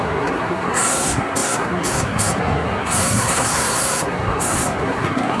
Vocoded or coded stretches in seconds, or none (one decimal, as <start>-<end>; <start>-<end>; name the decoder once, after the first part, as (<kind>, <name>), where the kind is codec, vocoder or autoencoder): 0.0-5.4 (codec, SNAC)